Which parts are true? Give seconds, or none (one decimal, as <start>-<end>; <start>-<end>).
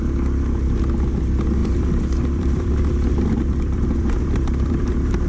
0.0-1.6; 4.8-5.3